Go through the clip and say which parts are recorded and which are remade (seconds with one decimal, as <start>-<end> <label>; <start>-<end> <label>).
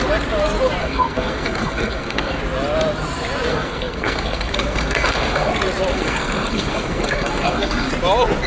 0.0-0.8 recorded; 0.8-2.4 remade; 2.4-3.5 recorded; 3.5-5.5 remade; 5.5-5.9 recorded; 5.9-7.9 remade; 7.9-8.5 recorded